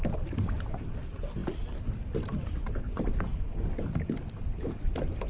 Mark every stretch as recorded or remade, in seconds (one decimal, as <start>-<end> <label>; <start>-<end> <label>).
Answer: 0.0-5.3 recorded